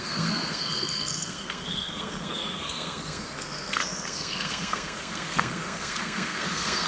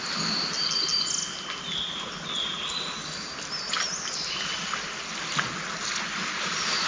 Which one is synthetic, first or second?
first